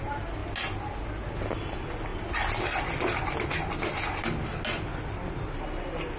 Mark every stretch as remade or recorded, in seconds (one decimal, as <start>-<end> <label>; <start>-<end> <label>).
0.0-6.2 recorded